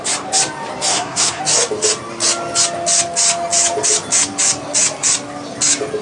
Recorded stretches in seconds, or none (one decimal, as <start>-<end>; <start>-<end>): 0.0-0.9; 1.4-6.0